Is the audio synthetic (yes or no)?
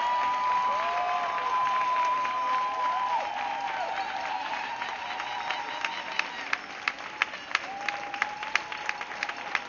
no